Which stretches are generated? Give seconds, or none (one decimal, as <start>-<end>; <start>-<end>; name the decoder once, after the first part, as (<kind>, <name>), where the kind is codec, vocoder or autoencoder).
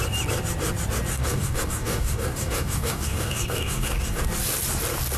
1.1-4.2 (codec, DAC)